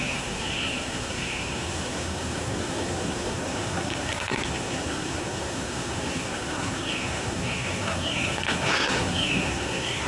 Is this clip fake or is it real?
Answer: fake